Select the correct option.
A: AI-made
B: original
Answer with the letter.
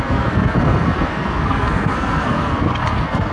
A